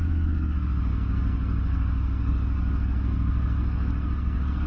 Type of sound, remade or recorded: remade